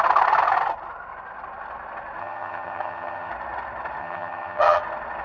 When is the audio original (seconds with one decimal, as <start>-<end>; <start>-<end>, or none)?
0.0-2.2; 3.3-4.0; 4.8-5.2